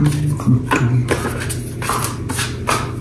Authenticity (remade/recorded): recorded